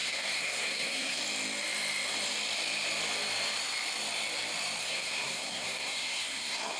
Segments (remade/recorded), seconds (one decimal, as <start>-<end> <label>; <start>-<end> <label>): 0.0-1.2 remade; 1.2-4.8 recorded; 4.8-6.8 remade